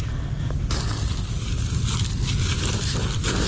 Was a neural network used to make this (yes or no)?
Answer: no